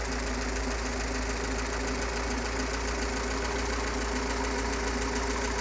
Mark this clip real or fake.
real